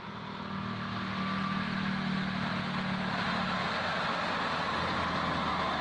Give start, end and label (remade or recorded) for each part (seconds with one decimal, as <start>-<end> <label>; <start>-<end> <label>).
0.0-2.5 recorded; 2.5-3.1 remade; 3.1-5.8 recorded